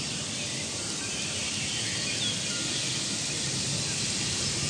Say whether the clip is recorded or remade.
recorded